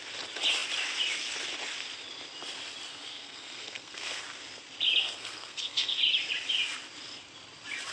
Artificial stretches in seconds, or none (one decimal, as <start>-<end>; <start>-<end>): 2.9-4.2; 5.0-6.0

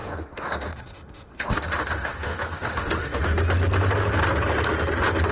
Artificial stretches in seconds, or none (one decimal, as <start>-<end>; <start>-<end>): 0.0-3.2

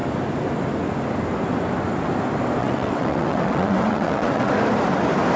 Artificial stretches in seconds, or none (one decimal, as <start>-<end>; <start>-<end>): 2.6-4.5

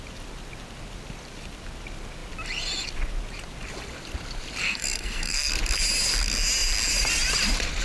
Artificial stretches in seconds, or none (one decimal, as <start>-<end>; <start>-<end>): 4.6-5.5